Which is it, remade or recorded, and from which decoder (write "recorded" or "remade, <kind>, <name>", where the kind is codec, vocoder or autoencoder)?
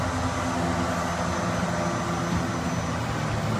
recorded